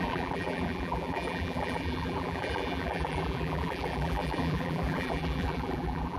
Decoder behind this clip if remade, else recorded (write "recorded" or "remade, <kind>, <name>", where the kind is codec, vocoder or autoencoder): remade, vocoder, BigVGAN v2